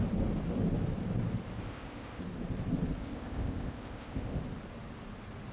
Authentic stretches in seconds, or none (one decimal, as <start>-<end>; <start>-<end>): 0.0-1.6; 2.2-3.0; 4.4-5.5